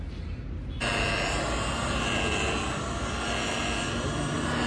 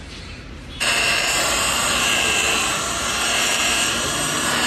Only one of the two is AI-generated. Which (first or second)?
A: second